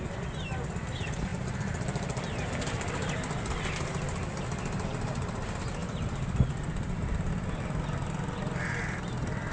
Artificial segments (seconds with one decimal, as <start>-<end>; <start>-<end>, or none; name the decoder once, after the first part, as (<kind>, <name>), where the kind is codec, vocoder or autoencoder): none